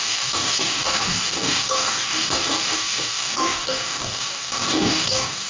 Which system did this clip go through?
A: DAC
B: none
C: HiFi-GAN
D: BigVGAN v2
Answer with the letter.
A